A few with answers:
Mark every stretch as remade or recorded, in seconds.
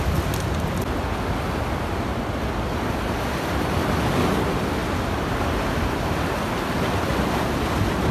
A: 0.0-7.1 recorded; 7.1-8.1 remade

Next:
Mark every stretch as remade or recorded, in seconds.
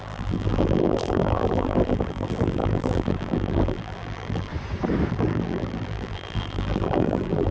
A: 0.0-4.5 remade; 4.5-5.1 recorded; 5.1-7.5 remade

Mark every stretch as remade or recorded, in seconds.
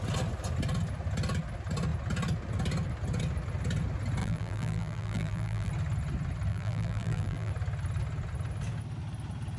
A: 0.0-4.2 recorded; 4.2-5.7 remade; 5.7-6.5 recorded; 6.5-7.5 remade; 7.5-9.6 recorded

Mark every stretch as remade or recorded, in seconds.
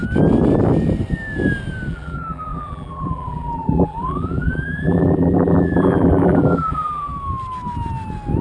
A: 0.0-1.9 recorded; 1.9-7.1 remade; 7.1-8.4 recorded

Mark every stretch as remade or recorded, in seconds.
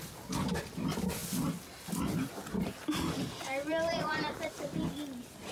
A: 0.0-1.2 recorded; 1.2-4.5 remade; 4.5-5.5 recorded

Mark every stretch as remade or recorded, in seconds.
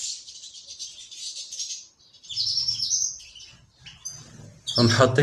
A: 0.0-3.1 remade; 3.1-3.6 recorded; 3.6-4.3 remade; 4.3-5.2 recorded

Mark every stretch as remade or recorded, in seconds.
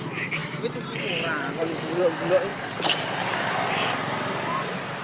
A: 0.0-2.5 recorded; 2.5-3.5 remade; 3.5-5.0 recorded